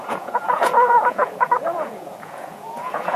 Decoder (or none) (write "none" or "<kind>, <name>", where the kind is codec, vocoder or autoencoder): vocoder, Vocos